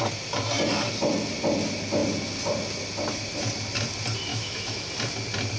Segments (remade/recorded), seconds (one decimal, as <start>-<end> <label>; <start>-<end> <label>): 0.0-4.3 recorded; 4.3-4.9 remade; 4.9-5.6 recorded